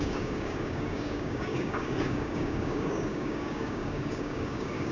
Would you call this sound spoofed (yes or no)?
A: yes